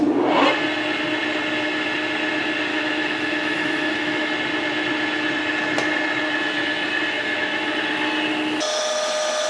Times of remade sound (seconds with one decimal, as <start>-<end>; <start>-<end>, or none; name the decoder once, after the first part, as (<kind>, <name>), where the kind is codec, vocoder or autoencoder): 2.7-4.3 (autoencoder, DAC-VAE)